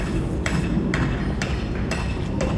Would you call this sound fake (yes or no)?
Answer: no